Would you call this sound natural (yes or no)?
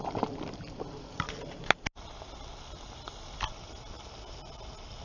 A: yes